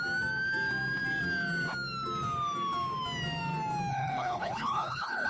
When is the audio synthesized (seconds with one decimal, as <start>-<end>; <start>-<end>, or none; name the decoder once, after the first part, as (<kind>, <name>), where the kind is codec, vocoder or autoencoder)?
3.9-5.3 (codec, HILCodec)